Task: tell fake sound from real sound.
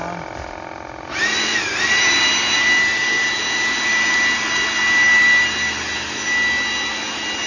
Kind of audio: real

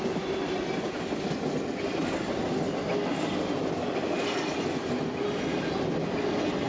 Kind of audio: real